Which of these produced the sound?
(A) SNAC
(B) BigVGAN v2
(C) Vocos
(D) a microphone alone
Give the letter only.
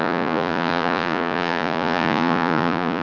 C